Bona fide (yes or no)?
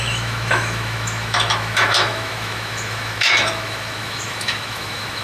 no